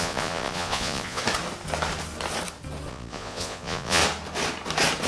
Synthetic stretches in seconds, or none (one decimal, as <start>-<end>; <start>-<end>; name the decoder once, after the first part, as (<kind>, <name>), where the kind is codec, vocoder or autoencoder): 0.0-1.2 (vocoder, Vocos); 2.9-4.0